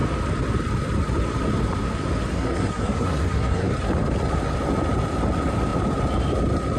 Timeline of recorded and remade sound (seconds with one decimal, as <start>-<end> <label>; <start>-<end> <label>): 0.0-2.3 recorded; 2.3-3.7 remade; 3.7-6.8 recorded